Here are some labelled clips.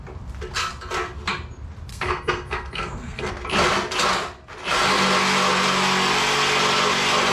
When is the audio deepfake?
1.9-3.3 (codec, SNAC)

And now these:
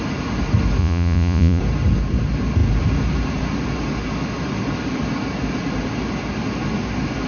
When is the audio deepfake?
0.8-1.6 (vocoder, Vocos)